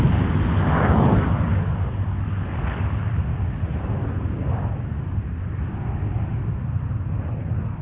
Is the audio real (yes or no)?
yes